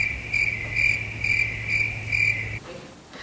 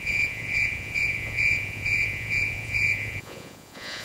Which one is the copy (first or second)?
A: second